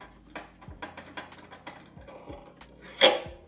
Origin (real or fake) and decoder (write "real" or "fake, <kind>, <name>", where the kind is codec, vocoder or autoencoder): real